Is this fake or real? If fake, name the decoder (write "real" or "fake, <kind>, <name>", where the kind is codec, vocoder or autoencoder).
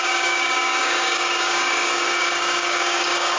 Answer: fake, codec, DAC